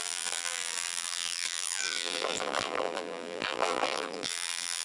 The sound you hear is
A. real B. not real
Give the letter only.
B